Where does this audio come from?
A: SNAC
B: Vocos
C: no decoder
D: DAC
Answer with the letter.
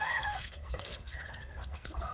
A